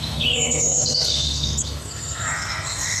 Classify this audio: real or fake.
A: fake